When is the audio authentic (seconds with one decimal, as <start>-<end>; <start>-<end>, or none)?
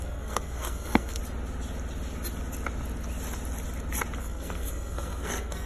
1.2-4.2